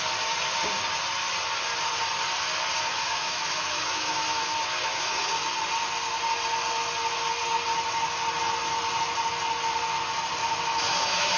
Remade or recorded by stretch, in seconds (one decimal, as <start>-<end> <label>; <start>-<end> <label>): 0.0-2.9 recorded; 2.9-5.3 remade; 5.3-10.4 recorded; 10.4-11.4 remade